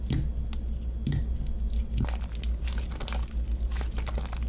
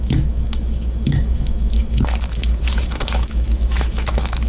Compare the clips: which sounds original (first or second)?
first